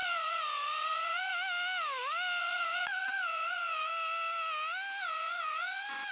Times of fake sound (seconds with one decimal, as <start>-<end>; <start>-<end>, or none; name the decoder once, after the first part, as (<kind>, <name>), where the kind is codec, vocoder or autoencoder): 0.0-1.3 (vocoder, Vocos); 2.4-3.9; 5.0-6.1